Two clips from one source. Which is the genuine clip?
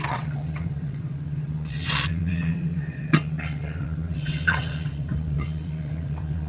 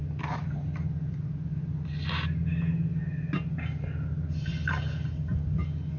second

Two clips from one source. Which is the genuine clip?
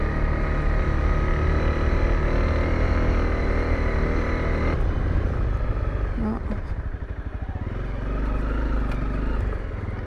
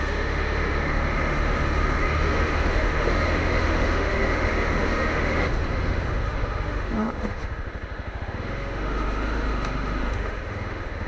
first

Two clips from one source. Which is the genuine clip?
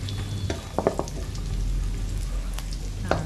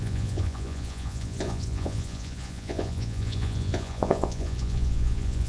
first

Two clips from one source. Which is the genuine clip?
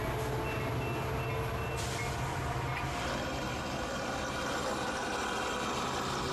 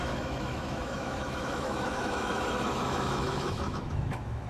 first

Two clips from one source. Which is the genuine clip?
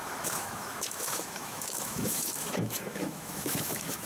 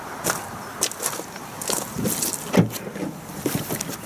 second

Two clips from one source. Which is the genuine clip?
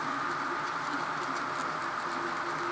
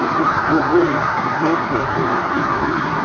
first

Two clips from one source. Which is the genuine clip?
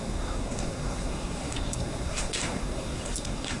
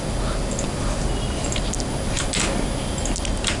second